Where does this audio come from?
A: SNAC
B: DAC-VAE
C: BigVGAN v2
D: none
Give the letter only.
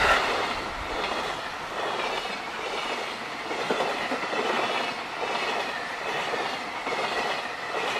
D